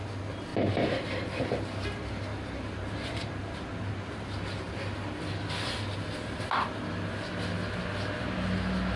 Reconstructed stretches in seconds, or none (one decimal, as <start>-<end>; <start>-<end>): 2.3-4.8